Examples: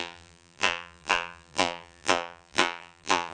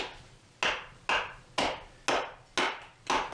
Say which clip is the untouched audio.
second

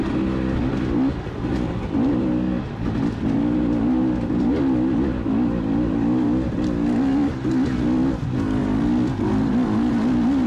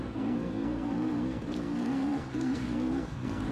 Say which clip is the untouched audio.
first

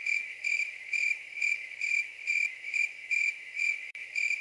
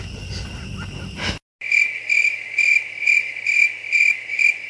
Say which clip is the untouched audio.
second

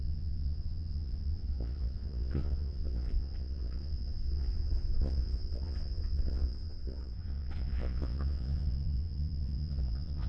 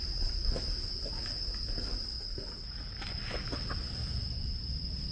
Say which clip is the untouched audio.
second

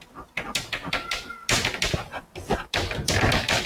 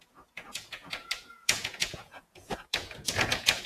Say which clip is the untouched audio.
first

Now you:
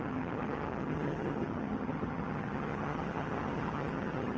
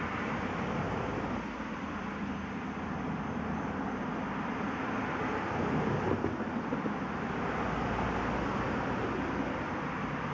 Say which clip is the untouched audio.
second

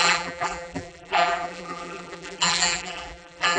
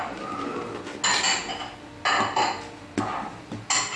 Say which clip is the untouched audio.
second